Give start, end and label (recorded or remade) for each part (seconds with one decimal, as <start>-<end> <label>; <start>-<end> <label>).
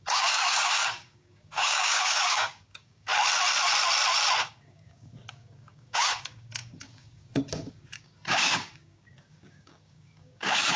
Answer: 0.0-3.1 remade; 3.1-4.4 recorded; 4.4-10.8 remade